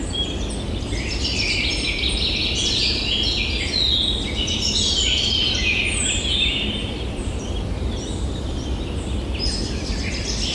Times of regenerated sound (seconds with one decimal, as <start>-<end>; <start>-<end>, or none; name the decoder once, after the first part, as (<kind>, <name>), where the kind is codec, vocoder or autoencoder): 6.8-8.6 (vocoder, BigVGAN v2)